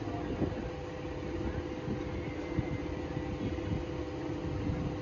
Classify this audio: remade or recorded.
recorded